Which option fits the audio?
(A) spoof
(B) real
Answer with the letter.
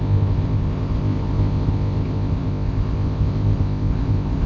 A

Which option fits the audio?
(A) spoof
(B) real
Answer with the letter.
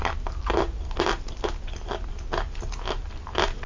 B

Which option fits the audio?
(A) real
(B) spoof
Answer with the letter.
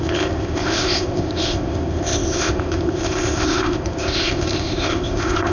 B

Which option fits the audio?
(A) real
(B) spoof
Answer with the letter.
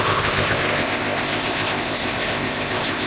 B